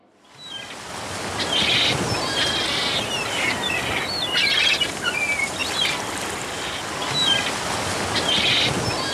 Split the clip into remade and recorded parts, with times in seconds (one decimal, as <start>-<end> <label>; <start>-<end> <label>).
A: 0.0-9.1 recorded